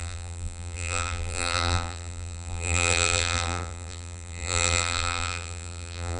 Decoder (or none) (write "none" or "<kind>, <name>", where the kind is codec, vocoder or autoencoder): vocoder, BigVGAN v2